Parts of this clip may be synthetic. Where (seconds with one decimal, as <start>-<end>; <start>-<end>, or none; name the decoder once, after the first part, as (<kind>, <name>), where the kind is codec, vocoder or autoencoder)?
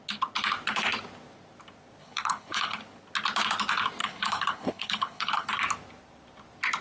2.0-2.8 (codec, HILCodec); 4.0-5.5